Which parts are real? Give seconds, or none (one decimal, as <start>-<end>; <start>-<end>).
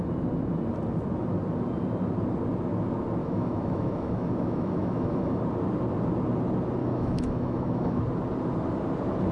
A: 0.0-3.2; 5.4-6.8; 8.0-9.3